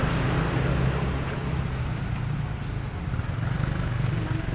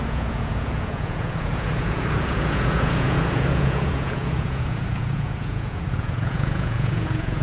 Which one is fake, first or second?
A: second